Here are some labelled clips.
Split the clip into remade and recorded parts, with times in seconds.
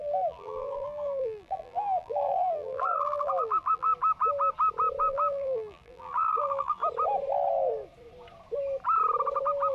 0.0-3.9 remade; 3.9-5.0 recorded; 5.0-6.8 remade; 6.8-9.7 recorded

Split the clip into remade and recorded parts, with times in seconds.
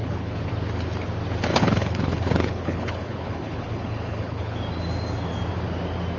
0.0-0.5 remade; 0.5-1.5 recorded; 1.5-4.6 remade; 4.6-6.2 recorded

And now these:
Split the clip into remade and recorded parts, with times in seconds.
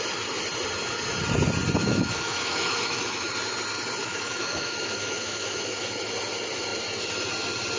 0.0-1.8 recorded; 1.8-3.3 remade; 3.3-4.0 recorded; 4.0-6.0 remade; 6.0-7.8 recorded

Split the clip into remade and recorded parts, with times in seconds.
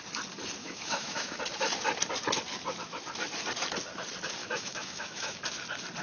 0.0-0.6 recorded; 0.6-1.4 remade; 1.4-4.4 recorded; 4.4-5.4 remade; 5.4-6.0 recorded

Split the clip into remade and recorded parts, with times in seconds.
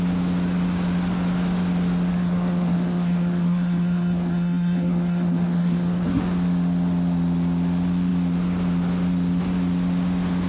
0.0-2.1 recorded; 2.1-6.2 remade; 6.2-10.5 recorded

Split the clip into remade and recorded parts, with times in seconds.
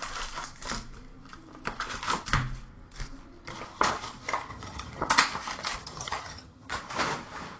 0.0-4.5 recorded; 4.5-5.1 remade; 5.1-5.8 recorded; 5.8-6.8 remade; 6.8-7.6 recorded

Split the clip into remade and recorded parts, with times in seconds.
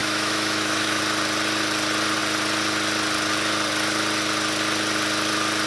0.0-1.0 remade; 1.0-5.7 recorded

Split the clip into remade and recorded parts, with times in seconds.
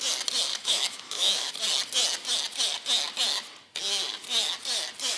0.0-0.5 recorded; 0.5-1.5 remade; 1.5-5.2 recorded